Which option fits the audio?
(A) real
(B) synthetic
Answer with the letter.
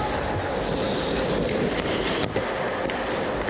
A